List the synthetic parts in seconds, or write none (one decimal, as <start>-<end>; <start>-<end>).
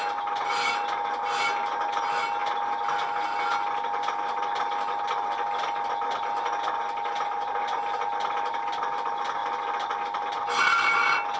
none